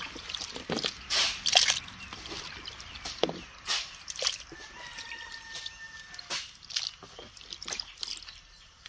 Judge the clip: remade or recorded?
recorded